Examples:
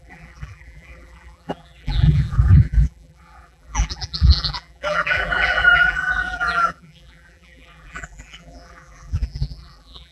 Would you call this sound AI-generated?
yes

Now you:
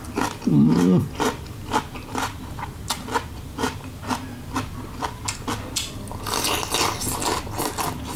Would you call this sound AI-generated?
no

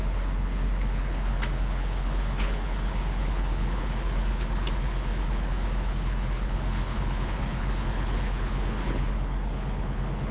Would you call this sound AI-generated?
yes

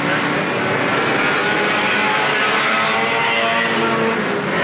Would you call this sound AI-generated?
no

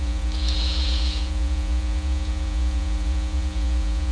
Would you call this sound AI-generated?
yes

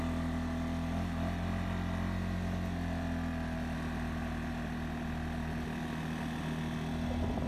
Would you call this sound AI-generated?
no